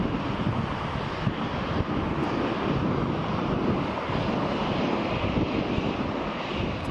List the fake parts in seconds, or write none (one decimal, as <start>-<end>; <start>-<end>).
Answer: none